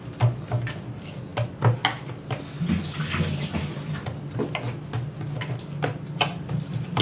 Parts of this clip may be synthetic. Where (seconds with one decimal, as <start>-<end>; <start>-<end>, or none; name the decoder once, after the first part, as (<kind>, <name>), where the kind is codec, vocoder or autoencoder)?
none